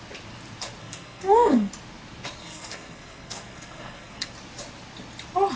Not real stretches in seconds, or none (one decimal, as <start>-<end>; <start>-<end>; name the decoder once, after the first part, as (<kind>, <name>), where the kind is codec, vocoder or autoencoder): 0.8-1.7 (codec, SNAC); 2.4-4.3